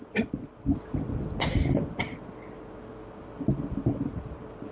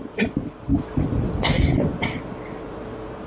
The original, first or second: first